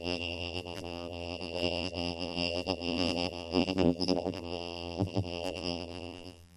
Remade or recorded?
remade